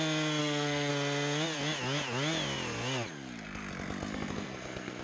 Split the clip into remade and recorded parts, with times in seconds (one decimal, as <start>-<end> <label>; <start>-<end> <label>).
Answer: 0.0-0.4 recorded; 0.4-0.9 remade; 0.9-4.1 recorded; 4.1-5.0 remade